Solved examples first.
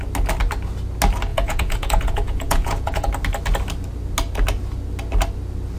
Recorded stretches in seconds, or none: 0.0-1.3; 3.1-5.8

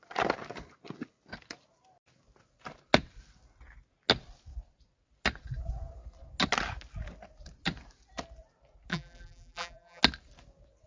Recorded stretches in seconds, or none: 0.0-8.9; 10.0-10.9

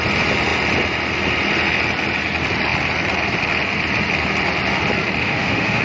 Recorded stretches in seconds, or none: 0.0-5.2